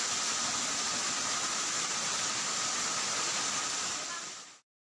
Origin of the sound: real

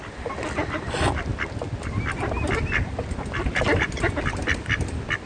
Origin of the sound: real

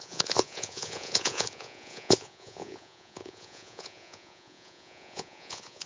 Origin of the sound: fake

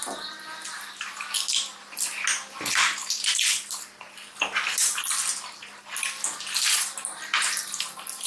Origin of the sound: real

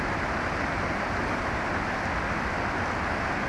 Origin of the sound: real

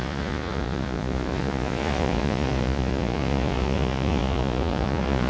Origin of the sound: fake